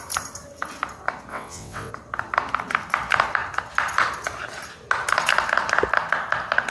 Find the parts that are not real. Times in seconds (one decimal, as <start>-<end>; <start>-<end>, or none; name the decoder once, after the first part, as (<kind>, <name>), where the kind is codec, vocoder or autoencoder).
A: 1.3-1.9 (vocoder, WaveNeXt)